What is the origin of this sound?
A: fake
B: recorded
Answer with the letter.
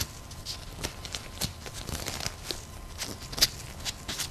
B